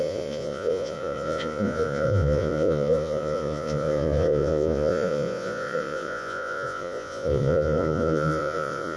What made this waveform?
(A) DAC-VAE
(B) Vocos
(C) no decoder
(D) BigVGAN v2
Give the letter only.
B